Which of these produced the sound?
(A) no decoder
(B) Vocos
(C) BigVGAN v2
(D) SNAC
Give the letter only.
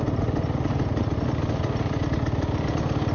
A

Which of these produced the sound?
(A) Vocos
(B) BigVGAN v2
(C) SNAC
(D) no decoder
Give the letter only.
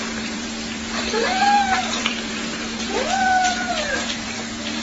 B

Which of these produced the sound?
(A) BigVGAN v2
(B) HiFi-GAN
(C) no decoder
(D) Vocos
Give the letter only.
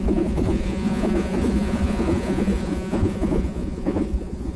D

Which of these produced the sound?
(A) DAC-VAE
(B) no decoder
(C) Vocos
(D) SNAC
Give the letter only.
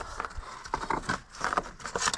B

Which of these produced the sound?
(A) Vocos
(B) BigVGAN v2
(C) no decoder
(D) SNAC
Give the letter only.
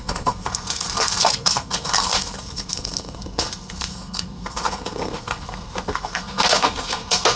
D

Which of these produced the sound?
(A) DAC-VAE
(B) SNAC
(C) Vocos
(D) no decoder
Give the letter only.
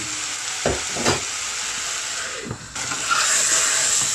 D